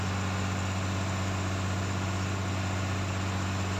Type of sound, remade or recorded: recorded